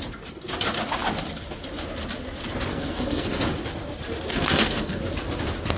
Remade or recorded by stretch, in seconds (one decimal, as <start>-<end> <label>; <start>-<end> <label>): 0.0-2.7 recorded; 2.7-3.4 remade; 3.4-4.3 recorded; 4.3-5.0 remade; 5.0-5.8 recorded